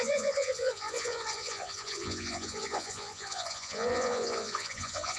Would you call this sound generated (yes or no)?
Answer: yes